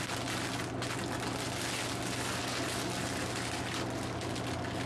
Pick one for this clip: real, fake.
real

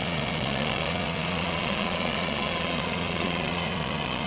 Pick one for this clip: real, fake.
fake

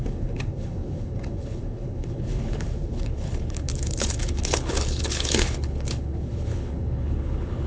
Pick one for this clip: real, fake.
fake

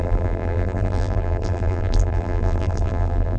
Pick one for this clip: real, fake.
fake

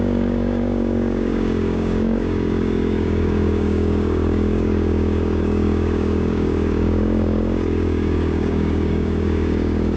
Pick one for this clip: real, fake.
fake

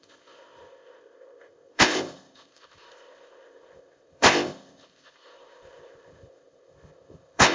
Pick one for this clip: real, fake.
fake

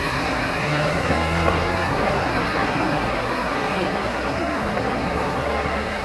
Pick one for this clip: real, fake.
fake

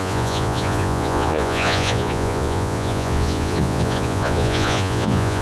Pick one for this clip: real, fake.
fake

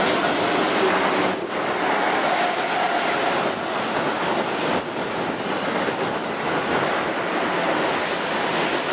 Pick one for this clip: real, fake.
real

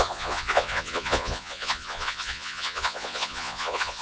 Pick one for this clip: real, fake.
fake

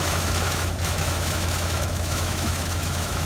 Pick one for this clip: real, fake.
fake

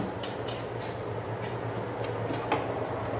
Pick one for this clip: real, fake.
real